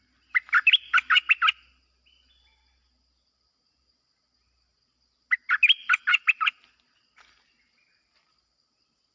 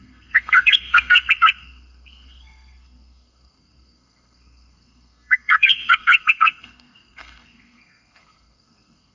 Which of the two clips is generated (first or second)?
second